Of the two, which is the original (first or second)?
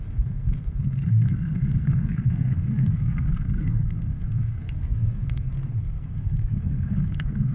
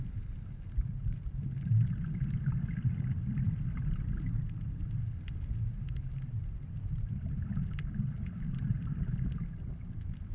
second